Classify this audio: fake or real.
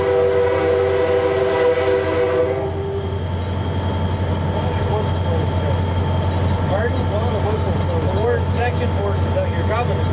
real